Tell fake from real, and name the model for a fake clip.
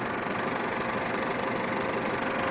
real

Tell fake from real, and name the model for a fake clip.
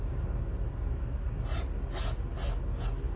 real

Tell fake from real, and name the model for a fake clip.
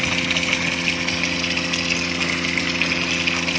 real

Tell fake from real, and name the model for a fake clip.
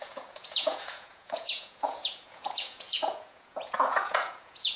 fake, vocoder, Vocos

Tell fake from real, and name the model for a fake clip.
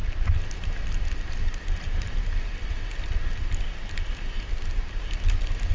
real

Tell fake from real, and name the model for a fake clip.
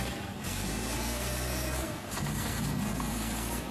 fake, codec, SNAC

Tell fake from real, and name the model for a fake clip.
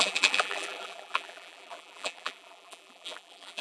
fake, vocoder, BigVGAN v2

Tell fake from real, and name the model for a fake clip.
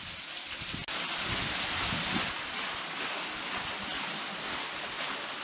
real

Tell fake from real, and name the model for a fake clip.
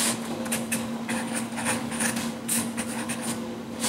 fake, codec, DAC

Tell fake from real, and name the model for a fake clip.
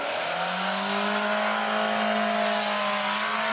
real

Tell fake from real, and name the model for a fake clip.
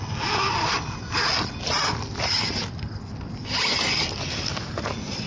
real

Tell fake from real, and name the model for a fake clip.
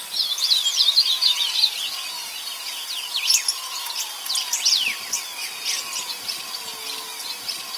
real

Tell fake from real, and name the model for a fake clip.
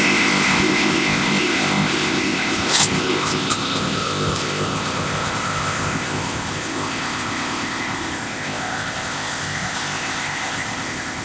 fake, codec, ZipCodec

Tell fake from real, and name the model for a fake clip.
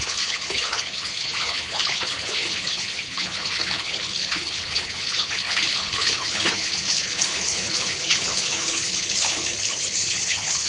fake, codec, HILCodec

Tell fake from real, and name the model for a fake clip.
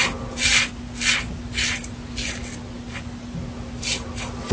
real